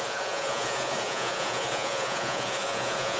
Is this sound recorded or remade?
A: remade